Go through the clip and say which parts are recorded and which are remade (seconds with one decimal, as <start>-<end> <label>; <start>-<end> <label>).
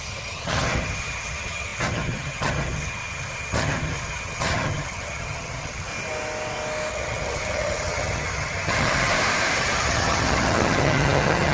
0.0-5.9 remade; 5.9-6.9 recorded; 6.9-9.1 remade; 9.1-9.6 recorded; 9.6-11.5 remade